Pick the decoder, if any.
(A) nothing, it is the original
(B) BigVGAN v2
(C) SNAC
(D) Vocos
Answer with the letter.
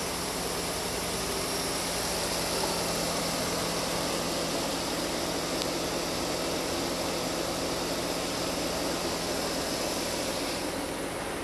A